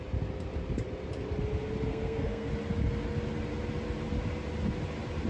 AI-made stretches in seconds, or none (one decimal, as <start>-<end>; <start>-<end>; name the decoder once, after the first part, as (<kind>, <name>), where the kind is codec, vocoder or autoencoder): 1.9-2.5 (codec, SNAC)